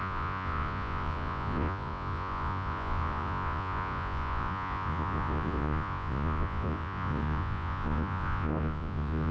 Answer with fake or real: fake